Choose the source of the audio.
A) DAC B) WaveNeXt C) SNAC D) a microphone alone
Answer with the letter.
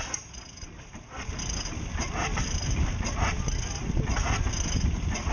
D